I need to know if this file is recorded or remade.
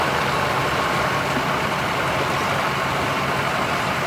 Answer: recorded